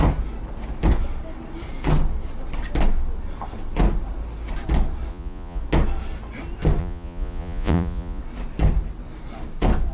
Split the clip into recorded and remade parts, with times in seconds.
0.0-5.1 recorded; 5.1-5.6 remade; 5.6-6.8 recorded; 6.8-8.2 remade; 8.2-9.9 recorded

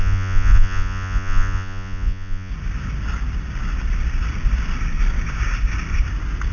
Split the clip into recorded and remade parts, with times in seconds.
0.0-2.5 remade; 2.5-6.5 recorded

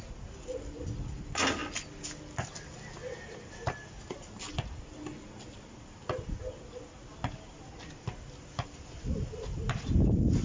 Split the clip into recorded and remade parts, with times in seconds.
0.0-10.4 recorded

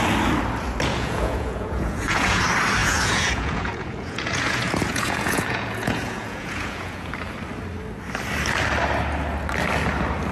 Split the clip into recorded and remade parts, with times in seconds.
0.0-0.9 recorded; 0.9-2.4 remade; 2.4-2.8 recorded; 2.8-7.1 remade; 7.1-10.3 recorded

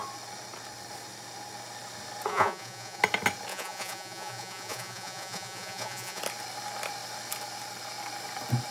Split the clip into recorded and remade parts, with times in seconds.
0.0-2.3 recorded; 2.3-3.0 remade; 3.0-3.5 recorded; 3.5-6.2 remade; 6.2-8.7 recorded

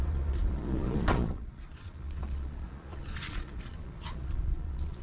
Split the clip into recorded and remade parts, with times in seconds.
0.0-5.0 remade

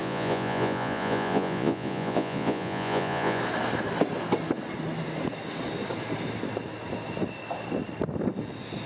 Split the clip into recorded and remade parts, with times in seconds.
0.0-3.4 remade; 3.4-8.9 recorded

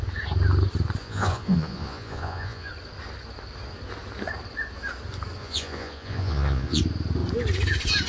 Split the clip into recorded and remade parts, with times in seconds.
0.0-1.0 recorded; 1.0-2.7 remade; 2.7-5.4 recorded; 5.4-6.8 remade; 6.8-8.1 recorded